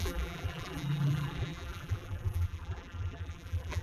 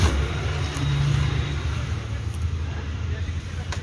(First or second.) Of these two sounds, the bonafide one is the second